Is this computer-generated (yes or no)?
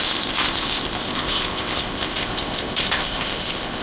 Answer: yes